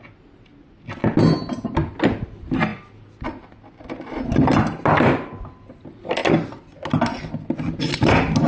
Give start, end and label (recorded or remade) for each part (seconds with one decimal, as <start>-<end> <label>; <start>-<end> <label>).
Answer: 0.0-8.5 recorded